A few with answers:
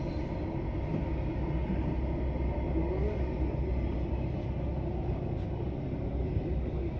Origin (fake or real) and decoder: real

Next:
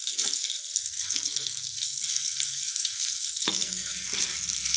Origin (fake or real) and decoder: fake, codec, SNAC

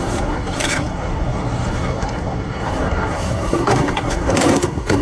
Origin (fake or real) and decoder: fake, codec, SNAC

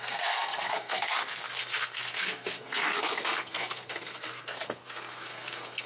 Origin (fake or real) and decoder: fake, codec, SNAC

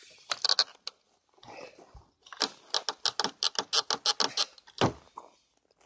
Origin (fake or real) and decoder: real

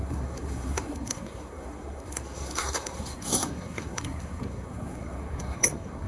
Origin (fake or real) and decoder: fake, codec, SNAC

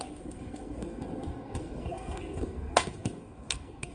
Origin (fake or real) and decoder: fake, codec, SNAC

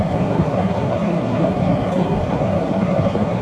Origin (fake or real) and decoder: fake, codec, SNAC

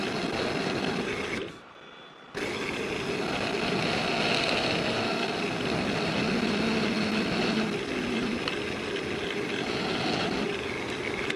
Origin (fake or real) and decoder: real